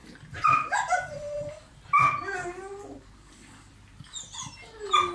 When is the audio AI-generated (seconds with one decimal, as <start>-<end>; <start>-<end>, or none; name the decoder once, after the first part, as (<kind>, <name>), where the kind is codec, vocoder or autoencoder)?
none